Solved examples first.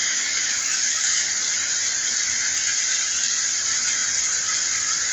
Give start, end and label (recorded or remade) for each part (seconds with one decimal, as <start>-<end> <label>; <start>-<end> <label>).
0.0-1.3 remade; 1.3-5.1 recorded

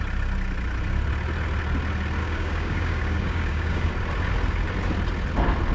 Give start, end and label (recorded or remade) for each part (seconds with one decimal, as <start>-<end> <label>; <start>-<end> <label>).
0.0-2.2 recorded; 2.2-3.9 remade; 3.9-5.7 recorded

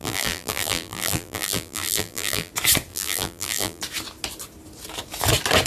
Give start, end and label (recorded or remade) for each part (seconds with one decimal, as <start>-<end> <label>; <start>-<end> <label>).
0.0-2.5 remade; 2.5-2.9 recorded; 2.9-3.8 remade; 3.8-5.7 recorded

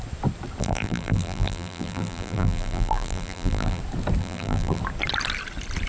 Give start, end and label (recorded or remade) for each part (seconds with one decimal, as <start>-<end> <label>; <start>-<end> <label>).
0.0-0.6 recorded; 0.6-3.8 remade; 3.8-4.2 recorded; 4.2-4.8 remade; 4.8-5.9 recorded

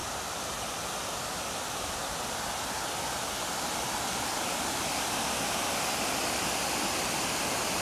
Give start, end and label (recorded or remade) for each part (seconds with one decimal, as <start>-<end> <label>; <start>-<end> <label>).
0.0-7.8 recorded

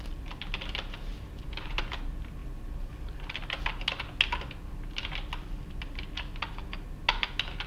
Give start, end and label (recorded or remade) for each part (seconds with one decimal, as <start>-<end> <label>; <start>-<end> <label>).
0.0-1.1 recorded; 1.1-1.8 remade; 1.8-7.7 recorded

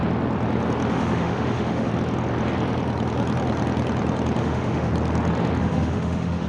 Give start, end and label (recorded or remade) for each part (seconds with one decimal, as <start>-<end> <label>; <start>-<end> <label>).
0.0-0.9 recorded; 0.9-1.9 remade; 1.9-4.4 recorded; 4.4-4.9 remade; 4.9-5.6 recorded; 5.6-6.5 remade

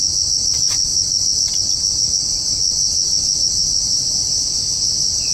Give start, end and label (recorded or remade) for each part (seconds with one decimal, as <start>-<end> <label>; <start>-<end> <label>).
0.0-5.3 recorded